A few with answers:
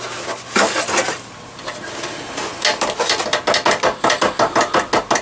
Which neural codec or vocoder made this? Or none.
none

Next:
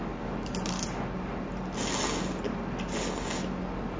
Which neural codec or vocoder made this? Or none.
none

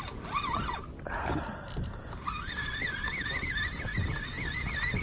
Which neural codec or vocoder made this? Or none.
none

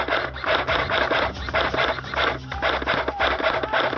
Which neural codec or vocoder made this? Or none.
none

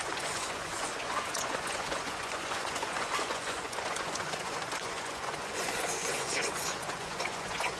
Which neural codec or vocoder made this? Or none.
vocoder, Vocos